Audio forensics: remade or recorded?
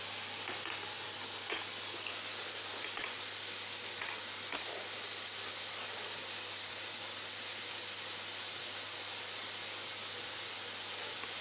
recorded